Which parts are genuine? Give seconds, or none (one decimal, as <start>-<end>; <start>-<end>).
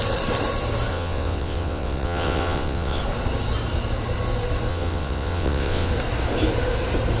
0.0-0.9; 3.0-4.7; 5.9-7.2